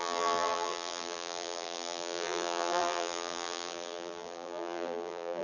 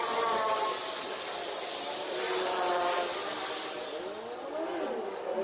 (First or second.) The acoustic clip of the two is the second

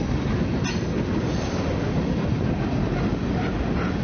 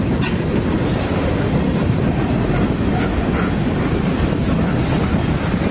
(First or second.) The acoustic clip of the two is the first